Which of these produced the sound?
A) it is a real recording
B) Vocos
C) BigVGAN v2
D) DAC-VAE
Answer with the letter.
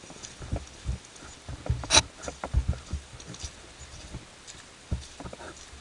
A